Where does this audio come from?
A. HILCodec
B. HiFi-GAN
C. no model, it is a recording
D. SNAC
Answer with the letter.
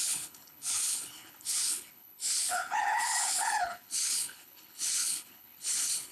A